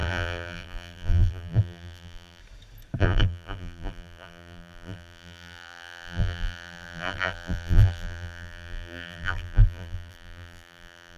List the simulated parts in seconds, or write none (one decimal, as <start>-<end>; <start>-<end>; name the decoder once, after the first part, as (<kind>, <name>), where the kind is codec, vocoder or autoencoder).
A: 0.0-2.4 (vocoder, BigVGAN v2); 3.0-11.2